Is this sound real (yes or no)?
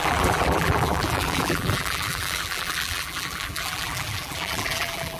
no